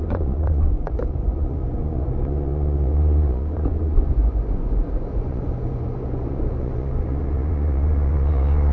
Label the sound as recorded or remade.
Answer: remade